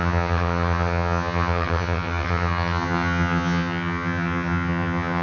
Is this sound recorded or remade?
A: remade